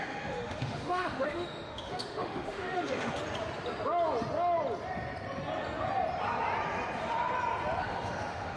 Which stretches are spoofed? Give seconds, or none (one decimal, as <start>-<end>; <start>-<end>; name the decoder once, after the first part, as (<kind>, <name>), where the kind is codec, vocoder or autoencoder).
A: 0.0-3.2 (autoencoder, DAC-VAE); 7.8-8.6

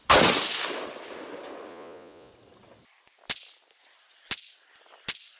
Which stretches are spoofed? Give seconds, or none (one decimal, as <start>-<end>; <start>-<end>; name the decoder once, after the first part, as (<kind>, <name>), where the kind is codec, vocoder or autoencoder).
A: 1.7-2.3 (vocoder, Vocos)

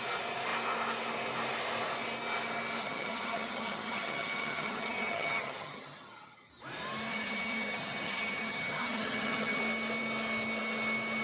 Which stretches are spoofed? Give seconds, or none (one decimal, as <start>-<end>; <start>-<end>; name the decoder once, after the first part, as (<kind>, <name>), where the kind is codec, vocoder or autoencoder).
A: 2.8-6.5 (vocoder, HiFi-GAN); 7.1-9.6